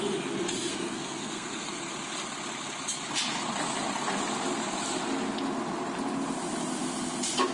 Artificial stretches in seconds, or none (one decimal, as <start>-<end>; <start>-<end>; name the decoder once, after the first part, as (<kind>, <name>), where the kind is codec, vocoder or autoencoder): 0.7-1.7 (codec, SNAC)